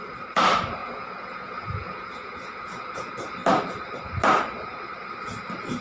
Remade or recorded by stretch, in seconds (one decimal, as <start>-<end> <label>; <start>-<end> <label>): 0.0-0.8 recorded; 0.8-3.1 remade; 3.1-5.8 recorded